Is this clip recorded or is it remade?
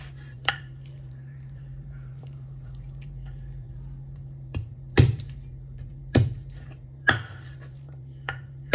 remade